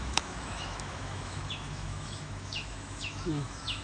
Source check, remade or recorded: remade